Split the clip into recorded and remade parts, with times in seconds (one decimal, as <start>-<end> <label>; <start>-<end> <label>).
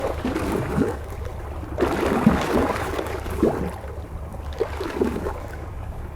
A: 0.0-1.3 remade; 1.3-2.1 recorded; 2.1-3.5 remade; 3.5-4.3 recorded; 4.3-6.1 remade